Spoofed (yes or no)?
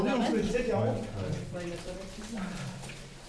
no